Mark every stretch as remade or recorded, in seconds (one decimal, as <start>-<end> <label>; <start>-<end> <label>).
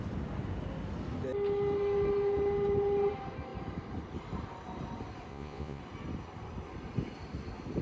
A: 0.0-5.3 recorded; 5.3-5.8 remade; 5.8-7.8 recorded